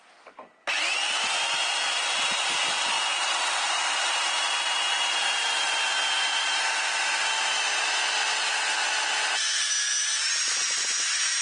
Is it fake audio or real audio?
real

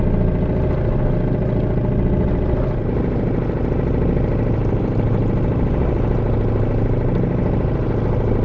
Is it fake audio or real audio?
real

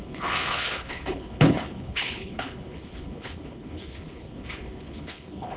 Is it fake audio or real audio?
fake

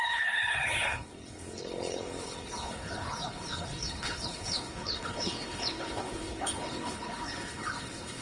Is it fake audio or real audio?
fake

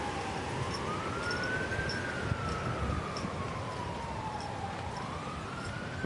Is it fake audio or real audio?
real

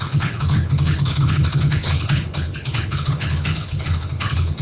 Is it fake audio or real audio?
fake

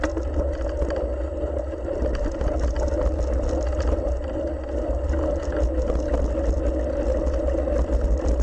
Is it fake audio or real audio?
real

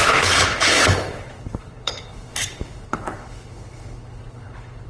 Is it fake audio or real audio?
fake